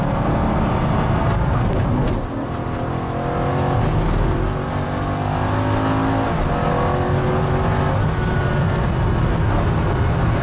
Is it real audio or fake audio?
real